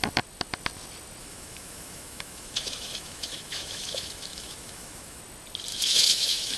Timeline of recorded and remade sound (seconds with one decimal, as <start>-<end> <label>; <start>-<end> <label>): 0.0-1.2 recorded; 1.2-5.2 remade; 5.2-5.7 recorded; 5.7-6.6 remade